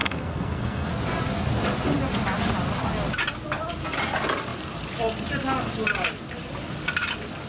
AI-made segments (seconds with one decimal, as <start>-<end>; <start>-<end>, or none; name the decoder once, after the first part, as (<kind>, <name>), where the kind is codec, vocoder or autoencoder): 0.0-0.9 (codec, SNAC)